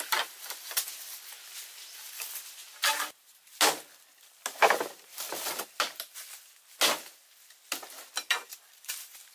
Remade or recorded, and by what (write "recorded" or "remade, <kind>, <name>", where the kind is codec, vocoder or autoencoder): recorded